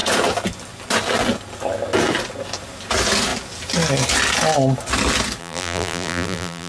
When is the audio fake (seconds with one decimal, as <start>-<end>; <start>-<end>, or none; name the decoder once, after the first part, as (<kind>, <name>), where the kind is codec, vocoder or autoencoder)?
5.4-6.7 (vocoder, BigVGAN v2)